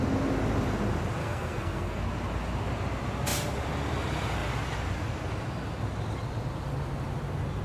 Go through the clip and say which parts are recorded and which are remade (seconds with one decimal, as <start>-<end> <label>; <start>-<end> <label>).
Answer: 0.0-1.2 recorded; 1.2-2.0 remade; 2.0-7.6 recorded